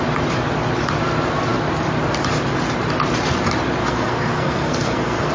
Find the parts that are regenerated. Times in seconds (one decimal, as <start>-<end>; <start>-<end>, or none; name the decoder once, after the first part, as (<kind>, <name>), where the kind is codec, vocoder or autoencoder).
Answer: 3.8-5.3 (codec, SNAC)